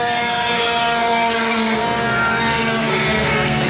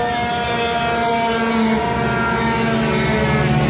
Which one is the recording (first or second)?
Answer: second